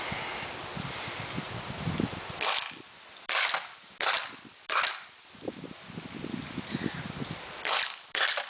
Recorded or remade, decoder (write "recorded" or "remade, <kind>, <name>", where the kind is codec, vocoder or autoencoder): recorded